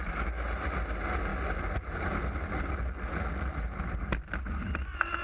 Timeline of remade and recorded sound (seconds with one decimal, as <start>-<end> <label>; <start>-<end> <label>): 0.0-5.2 recorded